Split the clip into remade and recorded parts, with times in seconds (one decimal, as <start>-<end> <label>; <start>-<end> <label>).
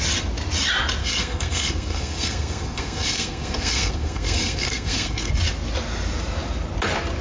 0.0-1.0 recorded; 1.0-5.3 remade; 5.3-7.2 recorded